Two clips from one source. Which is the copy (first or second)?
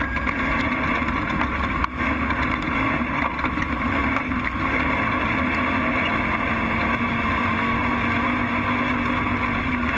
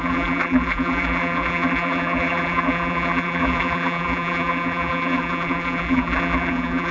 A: second